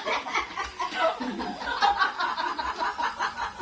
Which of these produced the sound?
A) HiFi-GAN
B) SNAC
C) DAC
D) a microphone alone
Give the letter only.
D